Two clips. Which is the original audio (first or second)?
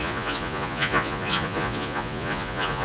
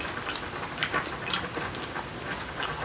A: second